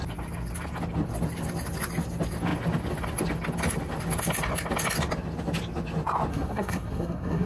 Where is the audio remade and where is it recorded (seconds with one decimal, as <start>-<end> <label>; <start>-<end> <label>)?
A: 0.0-6.3 recorded; 6.3-7.5 remade